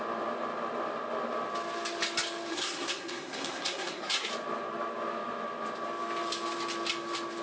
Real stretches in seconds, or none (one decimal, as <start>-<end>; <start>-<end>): 0.0-2.5; 4.3-7.4

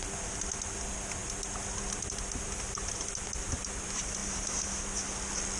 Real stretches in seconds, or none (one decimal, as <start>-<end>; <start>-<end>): 0.0-5.6

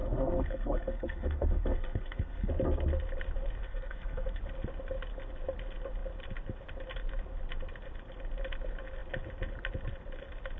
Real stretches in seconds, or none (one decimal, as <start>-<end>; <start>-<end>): 2.5-3.6; 4.4-10.6

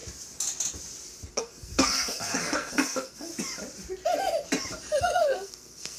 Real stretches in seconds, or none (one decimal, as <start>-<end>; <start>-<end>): 0.0-1.3; 3.3-5.0

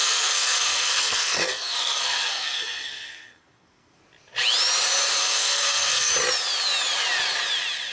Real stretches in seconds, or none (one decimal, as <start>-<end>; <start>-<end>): 4.0-5.2; 6.1-7.9

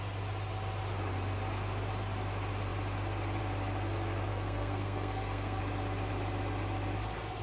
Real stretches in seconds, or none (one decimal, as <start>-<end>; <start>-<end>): 0.0-4.3; 5.6-7.4

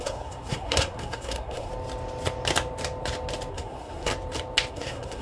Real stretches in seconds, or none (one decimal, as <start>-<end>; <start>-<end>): 1.7-3.5; 4.1-4.7

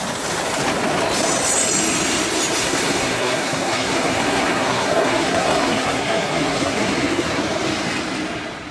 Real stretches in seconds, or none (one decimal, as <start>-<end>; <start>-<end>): 0.0-2.6; 7.4-8.7